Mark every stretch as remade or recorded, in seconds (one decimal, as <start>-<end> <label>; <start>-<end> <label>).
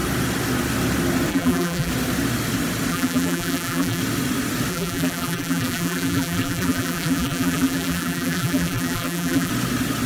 0.0-1.3 recorded; 1.3-1.9 remade; 1.9-2.9 recorded; 2.9-4.0 remade; 4.0-4.7 recorded; 4.7-9.5 remade; 9.5-10.1 recorded